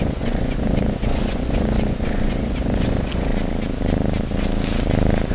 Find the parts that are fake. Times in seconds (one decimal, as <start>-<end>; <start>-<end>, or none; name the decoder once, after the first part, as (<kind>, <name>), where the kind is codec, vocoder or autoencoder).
0.0-3.3 (vocoder, Vocos)